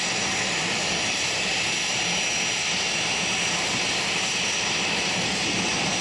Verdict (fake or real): real